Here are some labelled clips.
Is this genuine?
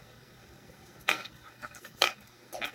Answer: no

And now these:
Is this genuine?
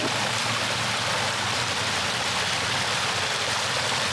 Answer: yes